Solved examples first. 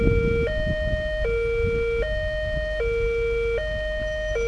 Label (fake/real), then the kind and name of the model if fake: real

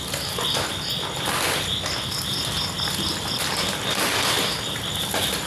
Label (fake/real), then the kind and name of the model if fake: real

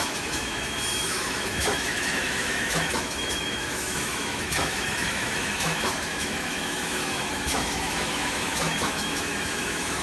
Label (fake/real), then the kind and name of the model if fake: fake, autoencoder, DAC-VAE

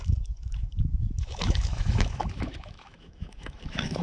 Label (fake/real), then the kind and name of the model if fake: fake, autoencoder, DAC-VAE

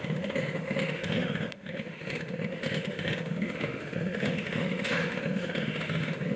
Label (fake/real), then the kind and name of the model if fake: fake, autoencoder, DAC-VAE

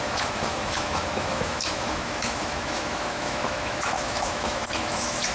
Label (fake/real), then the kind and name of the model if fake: fake, autoencoder, DAC-VAE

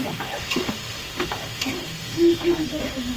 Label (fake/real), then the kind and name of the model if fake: fake, autoencoder, DAC-VAE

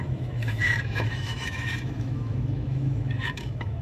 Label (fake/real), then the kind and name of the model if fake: fake, autoencoder, DAC-VAE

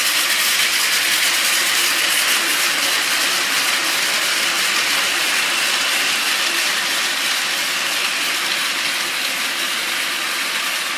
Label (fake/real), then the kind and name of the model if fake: real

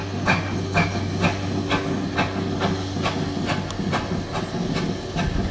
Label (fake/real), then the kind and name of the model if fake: real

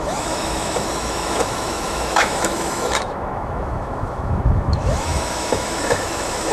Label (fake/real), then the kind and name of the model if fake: fake, autoencoder, DAC-VAE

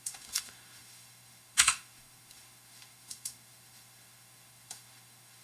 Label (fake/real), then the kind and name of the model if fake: fake, autoencoder, DAC-VAE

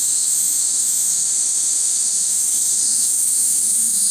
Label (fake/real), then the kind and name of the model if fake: fake, autoencoder, DAC-VAE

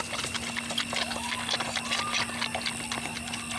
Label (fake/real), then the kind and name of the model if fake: real